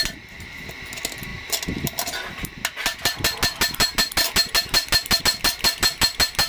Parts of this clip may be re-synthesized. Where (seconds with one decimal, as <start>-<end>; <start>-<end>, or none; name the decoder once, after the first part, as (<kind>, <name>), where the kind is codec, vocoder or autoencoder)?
none